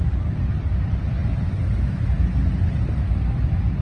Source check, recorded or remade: recorded